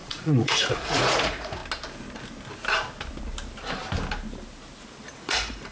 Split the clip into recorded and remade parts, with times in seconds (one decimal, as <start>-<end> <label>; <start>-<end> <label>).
0.0-1.6 remade; 1.6-5.0 recorded; 5.0-5.7 remade